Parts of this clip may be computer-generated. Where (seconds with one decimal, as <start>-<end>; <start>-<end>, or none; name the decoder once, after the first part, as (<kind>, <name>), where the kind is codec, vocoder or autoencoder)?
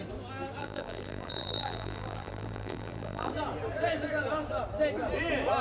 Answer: 0.6-3.3 (vocoder, BigVGAN v2)